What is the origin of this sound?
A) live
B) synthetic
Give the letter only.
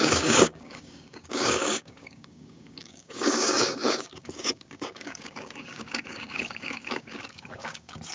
B